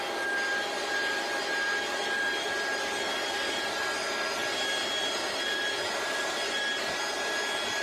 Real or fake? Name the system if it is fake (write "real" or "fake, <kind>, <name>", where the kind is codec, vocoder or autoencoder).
real